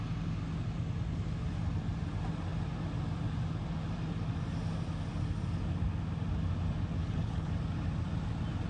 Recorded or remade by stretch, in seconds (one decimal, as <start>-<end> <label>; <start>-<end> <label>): 0.0-7.0 recorded; 7.0-7.5 remade; 7.5-8.7 recorded